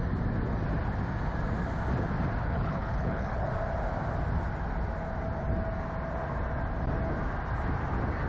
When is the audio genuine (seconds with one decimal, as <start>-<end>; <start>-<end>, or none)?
0.0-2.4; 3.5-8.3